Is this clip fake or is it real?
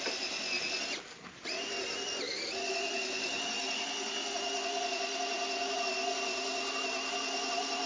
real